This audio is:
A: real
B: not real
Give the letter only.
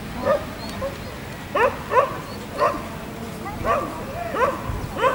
A